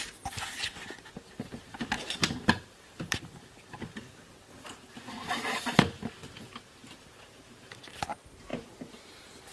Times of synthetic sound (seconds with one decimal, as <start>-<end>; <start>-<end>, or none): 2.2-3.8; 6.8-8.0; 8.5-9.1